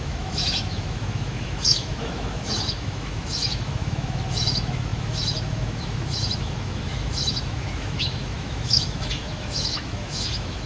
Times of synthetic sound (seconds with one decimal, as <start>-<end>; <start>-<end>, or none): 0.0-10.7